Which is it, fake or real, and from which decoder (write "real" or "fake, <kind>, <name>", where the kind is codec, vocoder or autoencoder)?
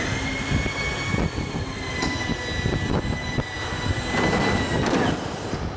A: real